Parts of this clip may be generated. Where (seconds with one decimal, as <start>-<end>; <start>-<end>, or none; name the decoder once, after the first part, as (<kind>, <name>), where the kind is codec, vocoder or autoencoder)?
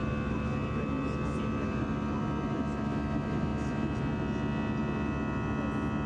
none